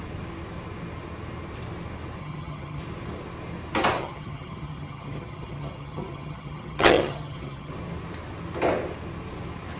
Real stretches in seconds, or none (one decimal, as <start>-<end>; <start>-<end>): 0.0-2.2; 2.8-4.0; 7.7-9.8